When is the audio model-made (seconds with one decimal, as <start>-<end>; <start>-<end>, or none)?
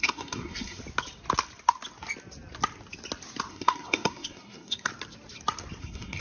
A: 0.0-0.8; 3.5-4.9; 5.8-6.2